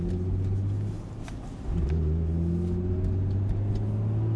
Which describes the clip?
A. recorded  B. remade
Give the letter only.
A